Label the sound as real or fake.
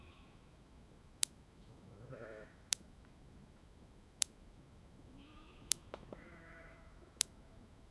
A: fake